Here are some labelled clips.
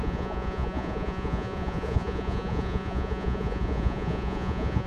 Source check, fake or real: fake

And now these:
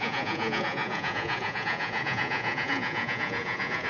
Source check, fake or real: fake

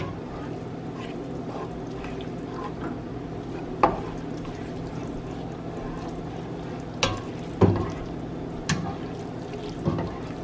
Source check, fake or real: real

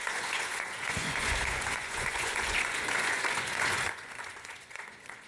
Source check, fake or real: fake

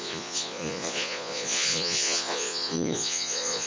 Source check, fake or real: fake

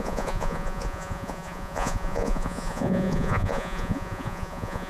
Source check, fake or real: fake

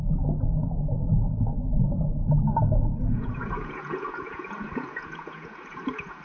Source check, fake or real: fake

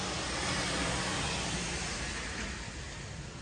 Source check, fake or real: real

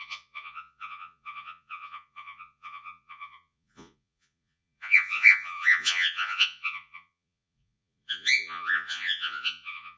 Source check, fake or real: fake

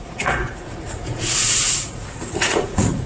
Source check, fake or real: fake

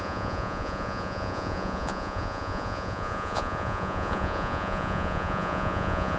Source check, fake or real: fake